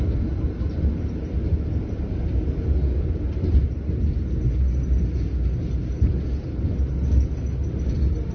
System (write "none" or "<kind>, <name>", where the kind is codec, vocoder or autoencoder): none